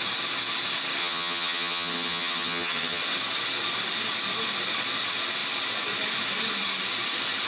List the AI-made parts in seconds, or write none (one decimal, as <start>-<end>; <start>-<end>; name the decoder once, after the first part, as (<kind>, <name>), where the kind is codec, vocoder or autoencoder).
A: 1.0-3.0 (vocoder, HiFi-GAN)